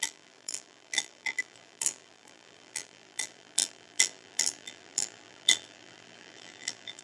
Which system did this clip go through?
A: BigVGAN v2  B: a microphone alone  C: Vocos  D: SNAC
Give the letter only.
A